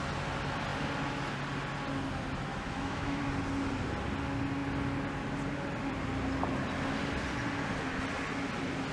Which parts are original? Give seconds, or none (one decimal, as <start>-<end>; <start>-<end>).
0.0-2.5; 3.2-8.9